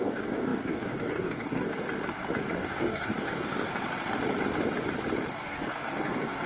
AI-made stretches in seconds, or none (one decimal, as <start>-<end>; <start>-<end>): 0.0-1.7; 2.4-3.7; 5.3-6.5